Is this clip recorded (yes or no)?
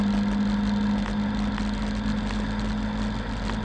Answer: yes